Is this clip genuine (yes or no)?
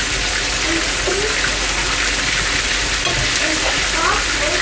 yes